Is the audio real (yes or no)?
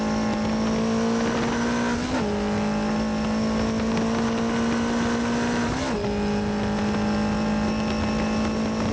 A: yes